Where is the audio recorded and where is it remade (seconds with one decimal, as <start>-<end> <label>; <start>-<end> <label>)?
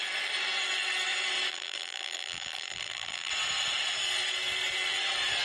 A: 0.0-1.5 recorded; 1.5-3.3 remade; 3.3-5.4 recorded